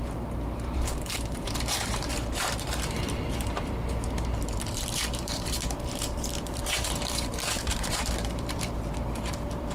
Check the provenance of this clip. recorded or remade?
remade